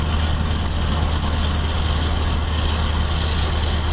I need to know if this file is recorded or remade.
recorded